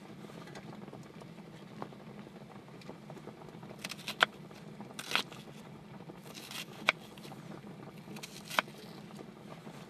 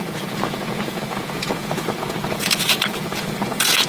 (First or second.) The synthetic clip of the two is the second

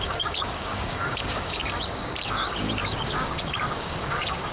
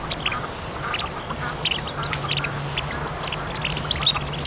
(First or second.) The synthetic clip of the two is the first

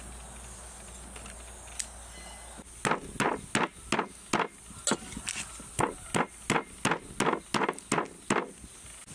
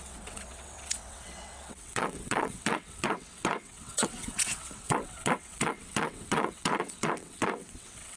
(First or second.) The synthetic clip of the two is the second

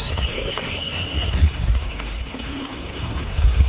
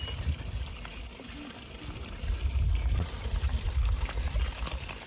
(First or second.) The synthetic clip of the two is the first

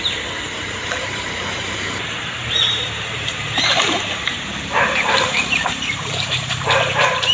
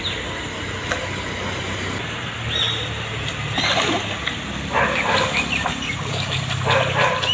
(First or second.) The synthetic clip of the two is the first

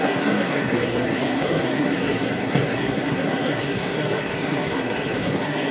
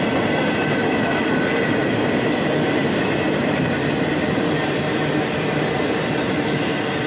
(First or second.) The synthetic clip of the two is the first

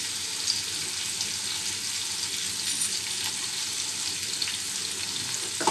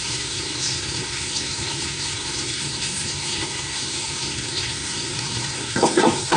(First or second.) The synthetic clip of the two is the second